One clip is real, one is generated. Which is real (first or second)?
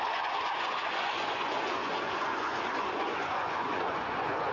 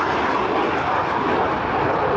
second